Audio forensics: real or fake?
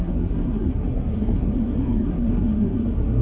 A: fake